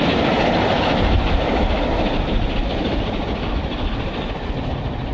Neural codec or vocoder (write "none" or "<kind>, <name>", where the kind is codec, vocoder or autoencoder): none